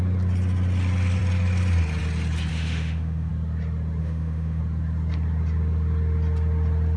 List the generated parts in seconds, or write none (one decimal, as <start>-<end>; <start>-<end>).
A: 2.5-3.3; 4.0-4.6